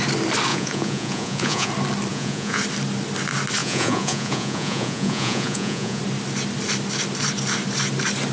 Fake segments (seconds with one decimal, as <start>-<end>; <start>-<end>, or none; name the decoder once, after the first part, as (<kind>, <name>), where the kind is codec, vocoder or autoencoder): 0.5-1.7 (vocoder, Vocos); 2.1-2.6; 3.6-6.0